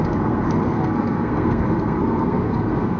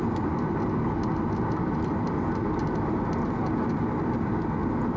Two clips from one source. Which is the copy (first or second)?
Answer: first